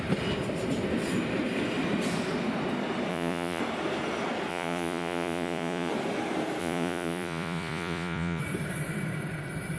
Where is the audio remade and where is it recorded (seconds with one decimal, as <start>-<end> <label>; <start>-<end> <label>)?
0.0-3.1 recorded; 3.1-3.6 remade; 3.6-4.5 recorded; 4.5-5.9 remade; 5.9-6.6 recorded; 6.6-8.4 remade; 8.4-9.8 recorded